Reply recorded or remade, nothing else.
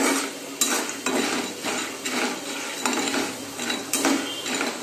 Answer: recorded